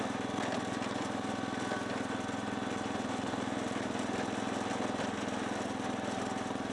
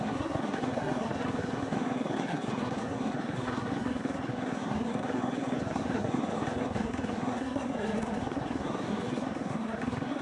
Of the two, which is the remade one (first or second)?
second